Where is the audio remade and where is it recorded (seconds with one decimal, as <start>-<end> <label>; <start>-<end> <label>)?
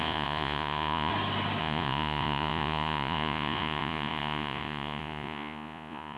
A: 0.0-1.1 remade; 1.1-1.6 recorded; 1.6-6.2 remade